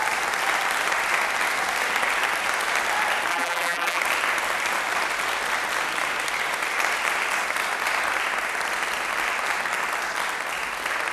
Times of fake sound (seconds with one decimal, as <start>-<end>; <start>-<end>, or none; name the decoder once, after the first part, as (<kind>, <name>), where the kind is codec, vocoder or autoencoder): 3.3-4.0 (vocoder, BigVGAN v2)